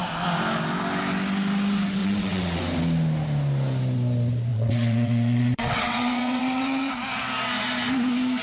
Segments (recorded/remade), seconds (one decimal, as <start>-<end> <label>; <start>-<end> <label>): 0.0-2.0 recorded; 2.0-2.6 remade; 2.6-4.5 recorded; 4.5-6.9 remade; 6.9-8.4 recorded